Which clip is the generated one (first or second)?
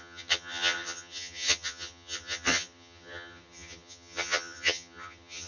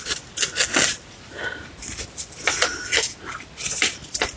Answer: first